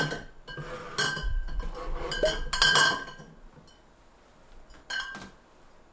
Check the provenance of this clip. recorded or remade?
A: recorded